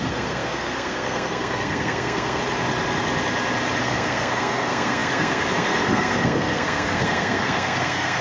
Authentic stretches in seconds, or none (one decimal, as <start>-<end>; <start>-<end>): 2.4-3.8